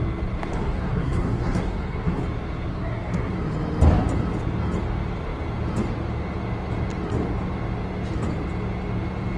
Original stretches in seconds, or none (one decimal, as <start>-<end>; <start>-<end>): 0.0-0.5; 2.2-2.7; 3.3-9.4